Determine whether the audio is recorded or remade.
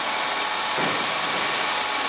recorded